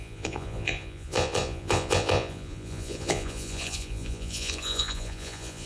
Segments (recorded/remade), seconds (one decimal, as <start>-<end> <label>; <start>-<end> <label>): 0.0-5.7 remade